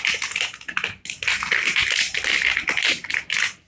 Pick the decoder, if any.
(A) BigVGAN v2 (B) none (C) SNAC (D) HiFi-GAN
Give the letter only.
B